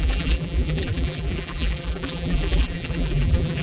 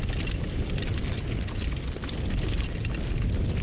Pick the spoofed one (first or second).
first